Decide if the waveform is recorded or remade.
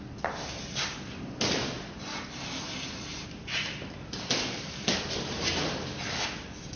recorded